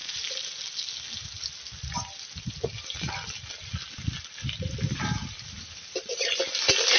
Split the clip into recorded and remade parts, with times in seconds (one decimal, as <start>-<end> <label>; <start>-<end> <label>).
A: 0.0-7.0 recorded

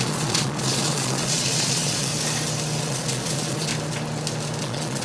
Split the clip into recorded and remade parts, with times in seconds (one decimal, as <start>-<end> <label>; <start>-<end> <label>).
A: 0.0-2.1 remade; 2.1-2.8 recorded; 2.8-3.7 remade; 3.7-4.6 recorded; 4.6-5.0 remade

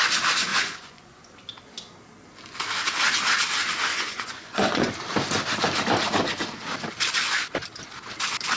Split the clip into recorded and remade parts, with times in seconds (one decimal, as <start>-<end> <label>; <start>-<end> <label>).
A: 0.0-0.5 recorded; 0.5-1.2 remade; 1.2-3.9 recorded; 3.9-4.9 remade; 4.9-8.6 recorded

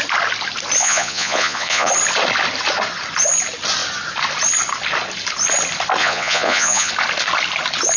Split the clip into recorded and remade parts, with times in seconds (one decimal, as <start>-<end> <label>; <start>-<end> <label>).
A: 0.0-0.8 recorded; 0.8-1.9 remade; 1.9-6.0 recorded; 6.0-6.9 remade; 6.9-8.0 recorded

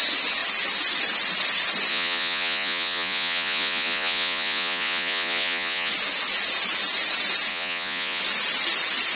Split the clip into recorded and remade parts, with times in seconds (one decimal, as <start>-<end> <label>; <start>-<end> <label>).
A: 0.0-1.9 recorded; 1.9-5.9 remade; 5.9-7.5 recorded; 7.5-8.2 remade; 8.2-9.2 recorded

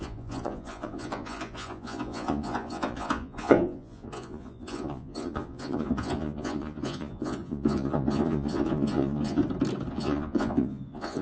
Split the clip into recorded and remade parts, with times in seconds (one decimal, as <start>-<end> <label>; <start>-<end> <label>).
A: 0.0-9.4 remade; 9.4-9.9 recorded; 9.9-11.2 remade